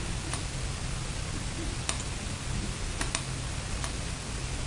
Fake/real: real